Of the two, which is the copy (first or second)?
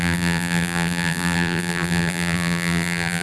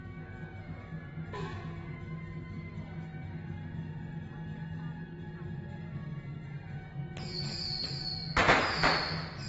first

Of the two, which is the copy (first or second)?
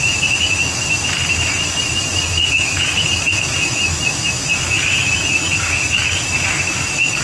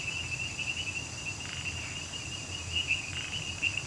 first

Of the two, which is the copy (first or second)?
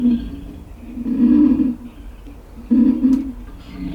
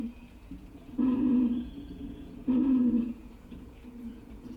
second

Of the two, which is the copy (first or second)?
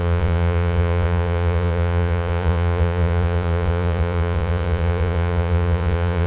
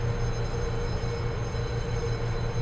first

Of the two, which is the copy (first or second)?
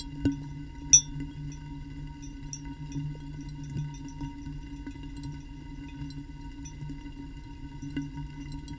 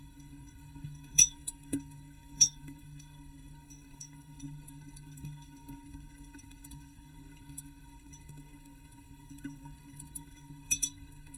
second